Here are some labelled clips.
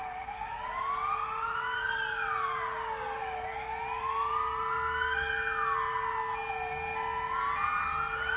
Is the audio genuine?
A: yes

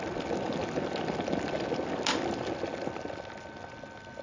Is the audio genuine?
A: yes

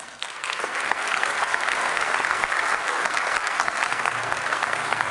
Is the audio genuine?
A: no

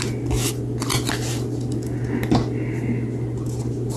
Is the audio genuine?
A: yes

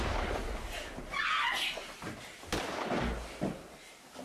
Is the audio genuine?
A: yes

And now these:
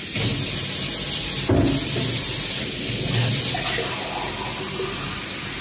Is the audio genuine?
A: yes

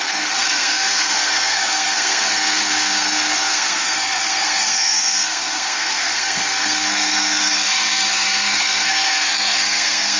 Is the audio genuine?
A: no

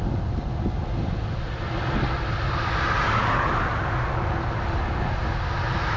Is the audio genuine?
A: yes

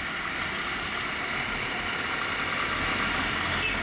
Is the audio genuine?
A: yes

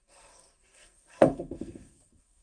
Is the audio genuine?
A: no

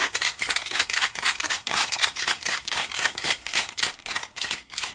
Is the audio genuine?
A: no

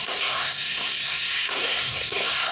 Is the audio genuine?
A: no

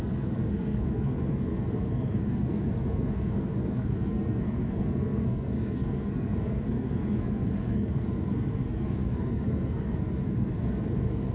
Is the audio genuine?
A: no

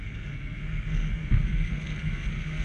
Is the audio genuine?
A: no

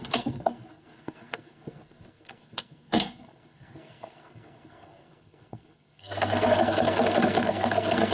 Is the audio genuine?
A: no